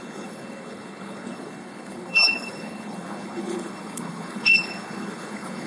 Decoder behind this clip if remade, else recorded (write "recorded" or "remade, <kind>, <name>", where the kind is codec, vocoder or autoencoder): remade, codec, HILCodec